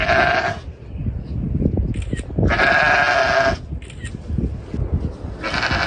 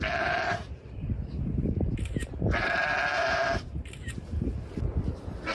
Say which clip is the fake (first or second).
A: second